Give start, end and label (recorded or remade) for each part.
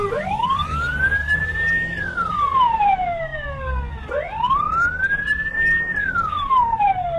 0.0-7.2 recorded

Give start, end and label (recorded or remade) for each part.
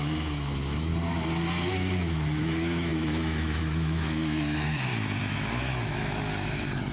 0.0-0.9 remade; 0.9-1.7 recorded; 1.7-4.9 remade; 4.9-5.6 recorded; 5.6-6.9 remade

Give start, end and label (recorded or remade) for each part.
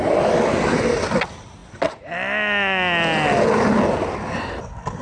0.0-5.0 recorded